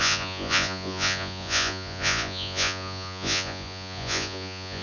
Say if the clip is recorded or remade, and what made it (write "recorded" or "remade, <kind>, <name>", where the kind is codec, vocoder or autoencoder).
remade, vocoder, Vocos